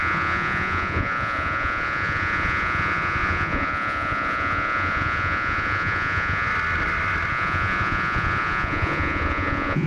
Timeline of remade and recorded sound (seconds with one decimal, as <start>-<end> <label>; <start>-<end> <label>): 0.0-6.5 remade; 6.5-7.3 recorded; 7.3-9.9 remade